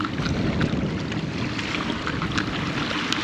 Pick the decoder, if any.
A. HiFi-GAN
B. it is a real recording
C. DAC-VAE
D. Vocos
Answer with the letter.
B